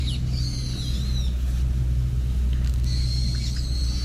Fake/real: real